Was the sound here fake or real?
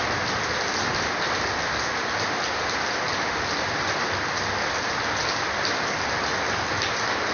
real